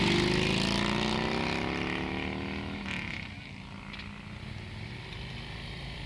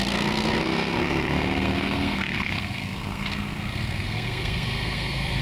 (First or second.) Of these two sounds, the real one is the first